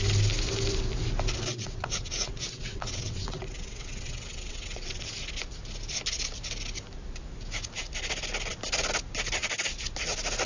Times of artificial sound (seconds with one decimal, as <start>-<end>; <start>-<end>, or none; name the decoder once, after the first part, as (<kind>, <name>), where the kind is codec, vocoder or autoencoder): 1.5-5.0 (vocoder, WaveNeXt)

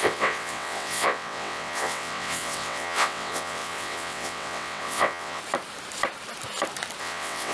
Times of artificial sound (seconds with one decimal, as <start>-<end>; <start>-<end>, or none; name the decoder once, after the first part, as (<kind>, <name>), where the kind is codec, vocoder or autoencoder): 0.0-5.4 (vocoder, WaveNeXt); 7.0-7.5

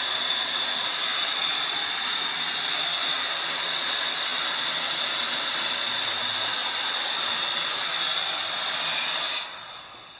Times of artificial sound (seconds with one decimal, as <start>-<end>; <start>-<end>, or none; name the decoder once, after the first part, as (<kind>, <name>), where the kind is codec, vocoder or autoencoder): none

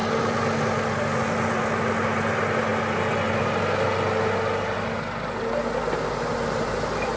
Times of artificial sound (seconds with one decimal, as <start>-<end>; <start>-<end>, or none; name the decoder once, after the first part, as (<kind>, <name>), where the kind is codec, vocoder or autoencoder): none

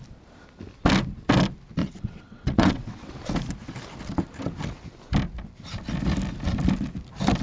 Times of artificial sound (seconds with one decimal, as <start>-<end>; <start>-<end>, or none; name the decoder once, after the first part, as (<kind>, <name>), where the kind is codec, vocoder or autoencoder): 1.8-3.1 (vocoder, WaveNeXt)